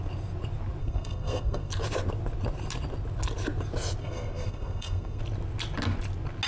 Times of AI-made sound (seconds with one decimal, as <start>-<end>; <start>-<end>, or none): 0.8-1.7; 4.0-5.2